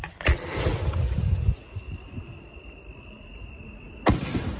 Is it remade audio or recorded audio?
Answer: recorded